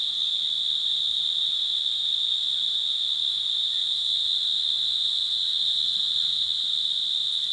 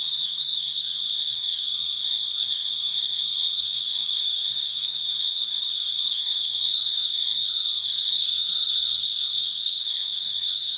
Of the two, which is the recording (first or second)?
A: first